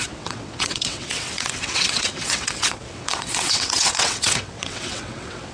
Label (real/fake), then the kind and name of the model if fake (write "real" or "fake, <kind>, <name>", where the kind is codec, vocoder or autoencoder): fake, vocoder, WaveNeXt